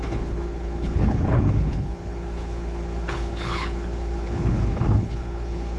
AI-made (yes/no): yes